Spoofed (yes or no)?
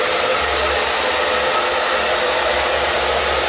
no